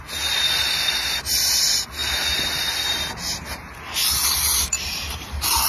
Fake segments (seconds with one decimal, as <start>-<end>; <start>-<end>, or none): none